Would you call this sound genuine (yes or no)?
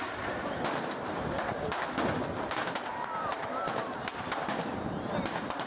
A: yes